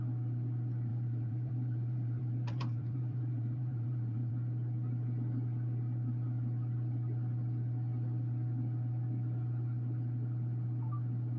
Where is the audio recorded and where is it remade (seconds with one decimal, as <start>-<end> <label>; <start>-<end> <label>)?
0.0-0.9 recorded; 0.9-4.3 remade; 4.3-11.4 recorded

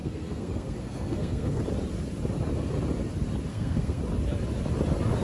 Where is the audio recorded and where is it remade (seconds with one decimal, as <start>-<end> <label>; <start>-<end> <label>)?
0.0-1.6 remade; 1.6-3.5 recorded; 3.5-4.0 remade; 4.0-5.2 recorded

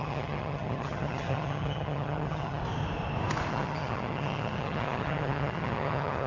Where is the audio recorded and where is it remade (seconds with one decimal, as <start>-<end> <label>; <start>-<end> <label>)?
0.0-2.6 remade; 2.6-3.5 recorded; 3.5-6.3 remade

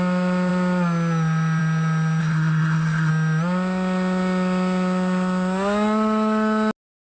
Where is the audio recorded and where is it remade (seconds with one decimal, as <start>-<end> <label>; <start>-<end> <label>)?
0.0-2.2 recorded; 2.2-3.1 remade; 3.1-7.1 recorded

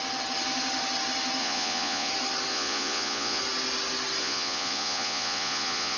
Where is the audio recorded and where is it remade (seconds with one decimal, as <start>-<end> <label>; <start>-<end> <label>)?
0.0-1.4 recorded; 1.4-2.1 remade; 2.1-2.5 recorded; 2.5-3.4 remade; 3.4-4.2 recorded; 4.2-6.0 remade